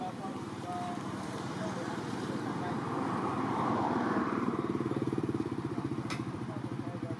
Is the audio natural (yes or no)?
no